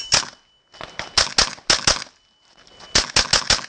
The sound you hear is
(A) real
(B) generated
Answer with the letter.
A